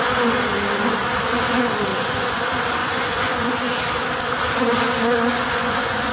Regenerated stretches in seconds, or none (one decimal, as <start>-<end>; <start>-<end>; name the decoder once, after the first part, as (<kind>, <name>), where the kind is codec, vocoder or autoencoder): 1.9-2.4 (vocoder, Vocos); 2.8-3.5; 5.3-6.1